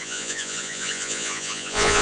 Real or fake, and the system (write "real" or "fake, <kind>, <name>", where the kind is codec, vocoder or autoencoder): fake, vocoder, Vocos